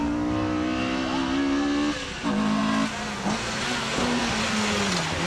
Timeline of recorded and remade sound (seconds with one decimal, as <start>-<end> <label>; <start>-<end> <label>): 0.0-5.3 recorded